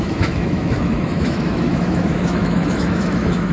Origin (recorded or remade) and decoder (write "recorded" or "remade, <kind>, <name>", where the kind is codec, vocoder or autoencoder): remade, autoencoder, DAC-VAE